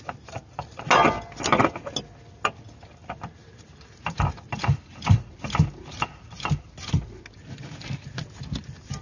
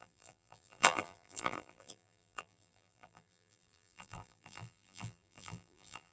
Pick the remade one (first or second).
second